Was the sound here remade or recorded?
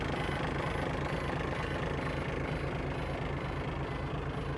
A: recorded